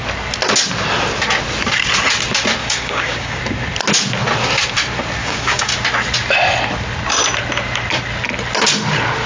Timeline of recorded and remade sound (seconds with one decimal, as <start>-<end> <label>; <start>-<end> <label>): 0.0-2.6 recorded; 2.6-3.4 remade; 3.4-5.2 recorded; 5.2-5.7 remade; 5.7-9.3 recorded